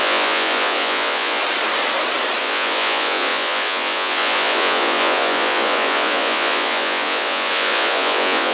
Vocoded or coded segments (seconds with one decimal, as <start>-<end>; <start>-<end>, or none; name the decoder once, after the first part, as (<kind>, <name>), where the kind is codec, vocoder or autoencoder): 0.0-1.4 (vocoder, Vocos); 2.4-8.5